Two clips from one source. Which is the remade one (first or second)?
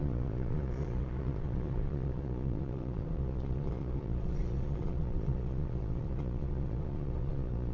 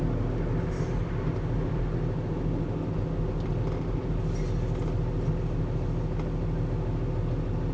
first